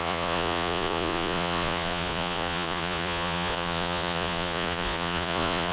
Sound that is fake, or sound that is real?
fake